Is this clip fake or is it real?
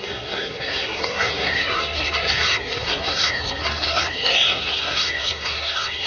fake